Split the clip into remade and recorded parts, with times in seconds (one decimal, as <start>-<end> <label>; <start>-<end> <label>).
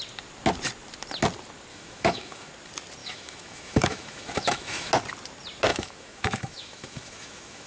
0.0-1.7 recorded; 1.7-2.5 remade; 2.5-3.0 recorded; 3.0-4.9 remade; 4.9-5.7 recorded; 5.7-7.7 remade